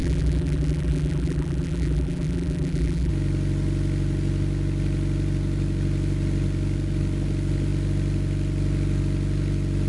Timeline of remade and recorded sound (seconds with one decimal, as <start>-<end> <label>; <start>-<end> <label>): 0.0-3.1 remade; 3.1-9.9 recorded